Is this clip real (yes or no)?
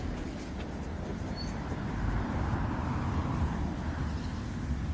yes